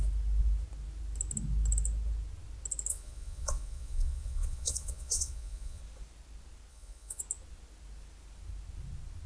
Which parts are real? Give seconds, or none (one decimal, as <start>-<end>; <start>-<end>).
0.0-2.9; 5.8-6.7; 7.2-9.3